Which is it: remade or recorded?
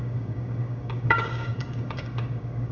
remade